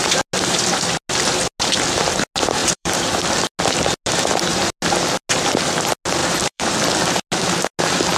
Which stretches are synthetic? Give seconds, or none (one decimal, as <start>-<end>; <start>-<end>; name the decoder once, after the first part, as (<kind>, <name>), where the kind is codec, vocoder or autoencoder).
2.6-3.3 (vocoder, BigVGAN v2); 6.2-7.1